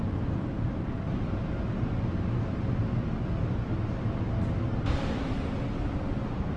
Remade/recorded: recorded